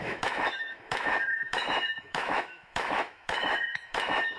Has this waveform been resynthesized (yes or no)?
yes